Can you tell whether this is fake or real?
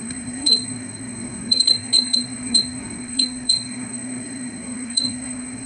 fake